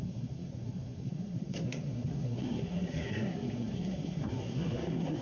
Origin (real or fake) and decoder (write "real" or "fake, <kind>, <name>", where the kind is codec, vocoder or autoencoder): fake, codec, SNAC